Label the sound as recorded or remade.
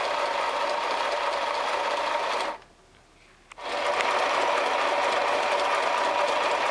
recorded